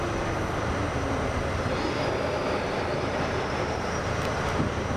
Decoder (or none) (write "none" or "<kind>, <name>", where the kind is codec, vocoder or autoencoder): vocoder, BigVGAN v2